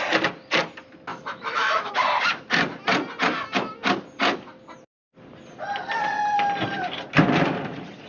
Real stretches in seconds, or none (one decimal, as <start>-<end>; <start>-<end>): 0.0-1.1; 1.9-8.1

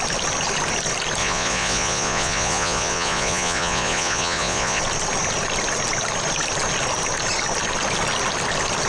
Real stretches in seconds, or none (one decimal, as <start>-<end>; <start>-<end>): 0.0-1.2; 4.8-8.9

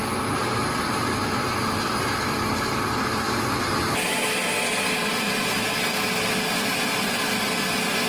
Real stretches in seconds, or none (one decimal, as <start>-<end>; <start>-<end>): 0.0-5.0; 5.7-8.1